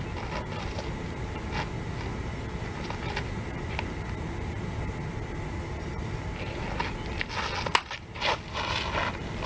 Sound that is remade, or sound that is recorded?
recorded